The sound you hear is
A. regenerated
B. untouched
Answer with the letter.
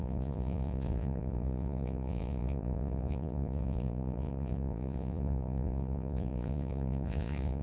A